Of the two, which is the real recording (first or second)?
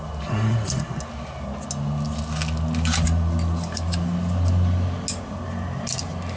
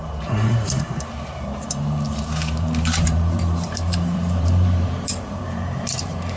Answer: first